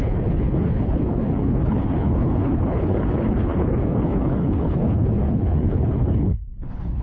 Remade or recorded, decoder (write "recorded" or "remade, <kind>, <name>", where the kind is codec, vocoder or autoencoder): remade, codec, HILCodec